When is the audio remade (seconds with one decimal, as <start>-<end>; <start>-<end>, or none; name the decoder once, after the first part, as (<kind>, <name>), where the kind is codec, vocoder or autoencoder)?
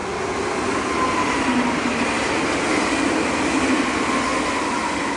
none